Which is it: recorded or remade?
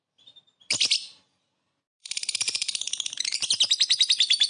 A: recorded